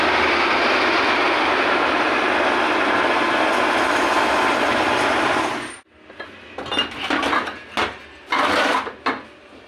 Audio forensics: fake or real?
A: real